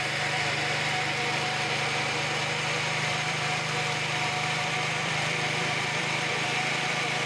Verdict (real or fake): fake